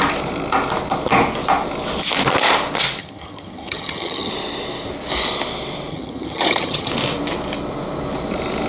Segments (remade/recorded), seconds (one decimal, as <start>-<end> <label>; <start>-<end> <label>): 0.0-3.0 recorded; 3.0-4.3 remade; 4.3-5.9 recorded; 5.9-6.9 remade; 6.9-8.7 recorded